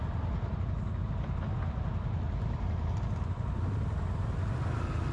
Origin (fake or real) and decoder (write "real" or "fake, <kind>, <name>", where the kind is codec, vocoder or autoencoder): real